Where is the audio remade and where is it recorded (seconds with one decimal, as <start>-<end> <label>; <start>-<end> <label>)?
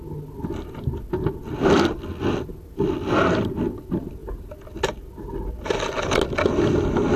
0.0-7.2 recorded